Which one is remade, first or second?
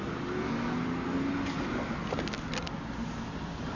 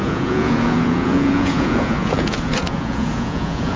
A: second